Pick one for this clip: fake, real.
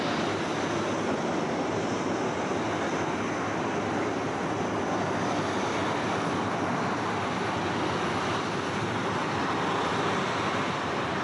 real